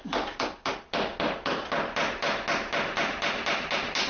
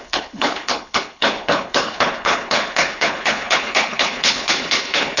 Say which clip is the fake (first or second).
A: second